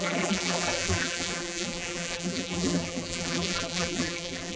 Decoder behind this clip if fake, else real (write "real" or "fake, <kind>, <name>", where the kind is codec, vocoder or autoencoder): fake, vocoder, BigVGAN v2